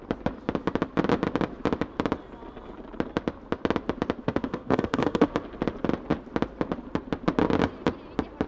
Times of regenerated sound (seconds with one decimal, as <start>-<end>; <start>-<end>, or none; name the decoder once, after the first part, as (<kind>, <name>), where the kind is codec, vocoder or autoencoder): 4.2-5.3 (codec, SNAC)